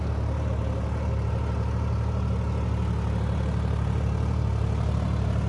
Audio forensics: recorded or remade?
recorded